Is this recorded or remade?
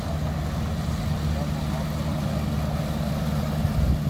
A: recorded